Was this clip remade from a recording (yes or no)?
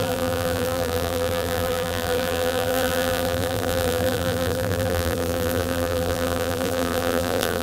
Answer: yes